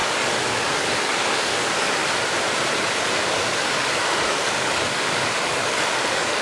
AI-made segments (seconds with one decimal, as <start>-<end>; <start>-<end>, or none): 0.0-2.0; 3.3-6.4